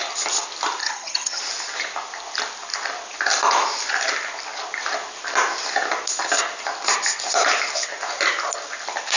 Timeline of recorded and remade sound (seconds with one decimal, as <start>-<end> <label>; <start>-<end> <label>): 0.0-0.8 recorded; 0.8-1.4 remade; 1.4-9.2 recorded